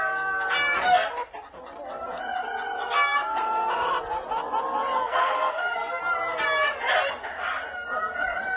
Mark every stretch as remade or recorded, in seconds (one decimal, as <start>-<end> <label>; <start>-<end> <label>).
0.0-5.0 recorded; 5.0-6.0 remade; 6.0-8.6 recorded